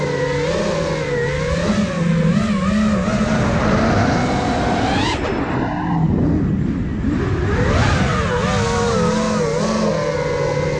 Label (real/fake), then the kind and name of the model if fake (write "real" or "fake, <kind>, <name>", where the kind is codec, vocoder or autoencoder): real